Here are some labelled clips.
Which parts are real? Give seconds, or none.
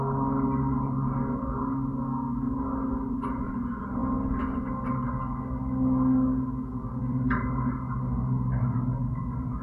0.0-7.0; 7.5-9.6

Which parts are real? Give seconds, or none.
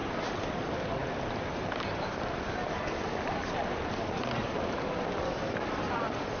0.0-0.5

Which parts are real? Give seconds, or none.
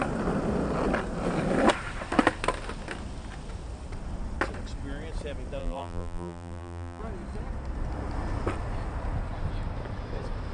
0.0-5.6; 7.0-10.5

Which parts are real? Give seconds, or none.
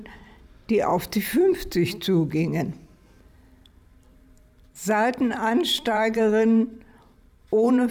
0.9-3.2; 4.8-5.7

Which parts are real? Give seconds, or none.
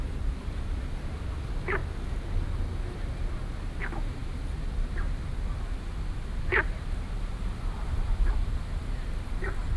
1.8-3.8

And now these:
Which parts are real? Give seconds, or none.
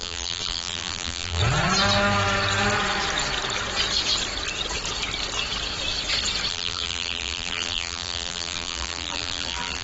1.4-6.5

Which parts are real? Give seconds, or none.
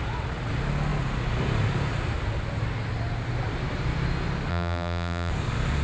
0.0-4.5; 5.3-5.8